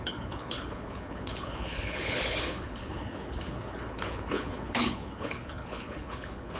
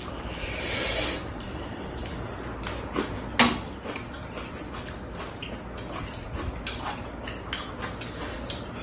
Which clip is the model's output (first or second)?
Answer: first